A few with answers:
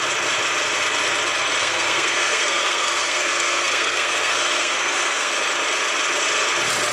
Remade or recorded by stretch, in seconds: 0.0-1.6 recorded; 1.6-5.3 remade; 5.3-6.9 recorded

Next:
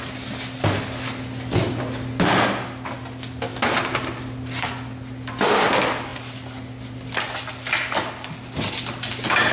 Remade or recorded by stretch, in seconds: 0.0-9.5 recorded